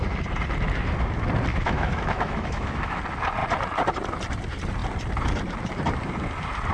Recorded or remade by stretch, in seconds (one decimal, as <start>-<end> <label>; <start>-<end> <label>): 0.0-1.5 recorded; 1.5-3.0 remade; 3.0-6.7 recorded

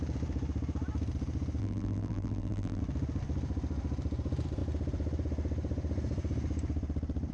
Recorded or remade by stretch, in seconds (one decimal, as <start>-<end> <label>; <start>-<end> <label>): 0.0-1.6 recorded; 1.6-2.8 remade; 2.8-7.3 recorded

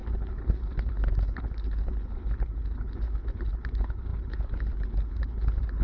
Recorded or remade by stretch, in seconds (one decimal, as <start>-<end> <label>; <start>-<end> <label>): 0.0-5.8 remade